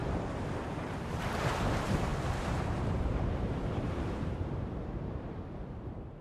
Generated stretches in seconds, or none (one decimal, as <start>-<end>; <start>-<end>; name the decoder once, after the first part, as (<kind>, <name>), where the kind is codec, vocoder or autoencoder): 0.0-6.2 (vocoder, BigVGAN v2)